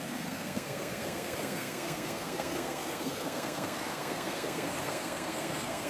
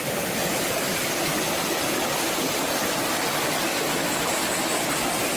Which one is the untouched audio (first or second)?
second